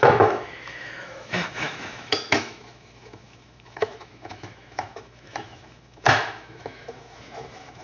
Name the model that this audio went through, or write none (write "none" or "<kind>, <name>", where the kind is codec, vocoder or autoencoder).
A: autoencoder, DAC-VAE